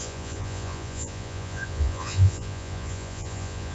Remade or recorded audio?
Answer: remade